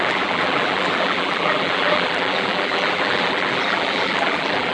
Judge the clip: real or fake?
fake